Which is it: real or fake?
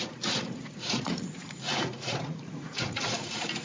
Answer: fake